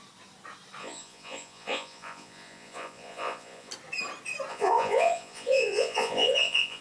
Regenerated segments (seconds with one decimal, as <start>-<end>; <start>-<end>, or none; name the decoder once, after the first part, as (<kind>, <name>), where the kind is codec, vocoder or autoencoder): 0.8-3.7 (vocoder, Vocos); 4.5-6.8